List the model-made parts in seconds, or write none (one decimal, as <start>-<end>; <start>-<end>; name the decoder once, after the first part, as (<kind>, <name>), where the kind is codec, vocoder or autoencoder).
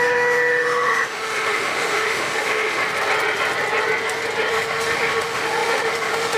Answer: 0.0-2.8 (autoencoder, DAC-VAE); 4.5-6.4